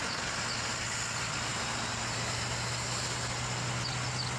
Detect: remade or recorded recorded